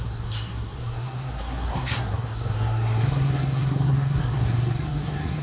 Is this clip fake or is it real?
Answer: fake